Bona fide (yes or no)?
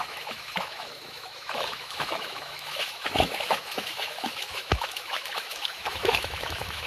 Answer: no